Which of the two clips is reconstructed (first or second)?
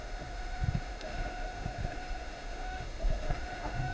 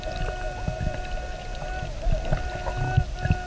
first